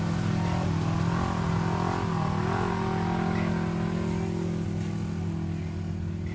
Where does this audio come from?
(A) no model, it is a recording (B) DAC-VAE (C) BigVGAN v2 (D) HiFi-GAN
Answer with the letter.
A